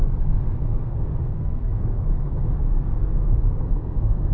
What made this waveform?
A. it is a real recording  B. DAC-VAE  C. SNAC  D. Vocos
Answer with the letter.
C